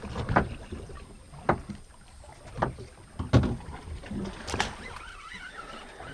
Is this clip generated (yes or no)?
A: no